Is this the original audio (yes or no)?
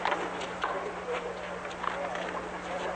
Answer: yes